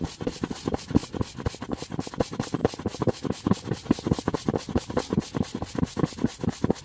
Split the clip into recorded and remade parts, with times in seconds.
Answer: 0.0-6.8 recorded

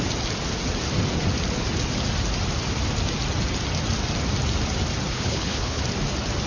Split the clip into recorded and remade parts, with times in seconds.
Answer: 0.0-5.1 recorded; 5.1-5.8 remade; 5.8-6.5 recorded